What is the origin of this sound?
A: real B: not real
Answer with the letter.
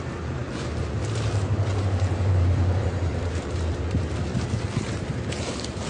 B